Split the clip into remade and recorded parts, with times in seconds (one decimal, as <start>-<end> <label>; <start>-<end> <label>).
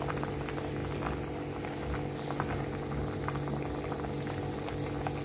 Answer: 0.0-5.2 recorded